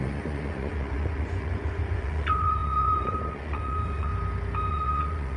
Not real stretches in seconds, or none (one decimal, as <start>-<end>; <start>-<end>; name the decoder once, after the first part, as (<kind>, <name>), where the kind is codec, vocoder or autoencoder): 0.0-4.1 (vocoder, Vocos); 4.7-5.4

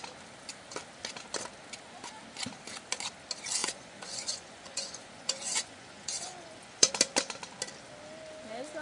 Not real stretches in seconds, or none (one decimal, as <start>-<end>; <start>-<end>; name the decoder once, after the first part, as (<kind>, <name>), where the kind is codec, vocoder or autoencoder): 3.6-6.9 (vocoder, Vocos)

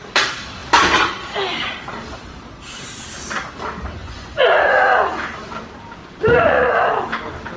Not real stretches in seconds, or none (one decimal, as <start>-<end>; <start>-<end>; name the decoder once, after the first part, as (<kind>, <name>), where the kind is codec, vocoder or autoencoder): 4.0-4.8 (vocoder, Vocos); 6.0-6.7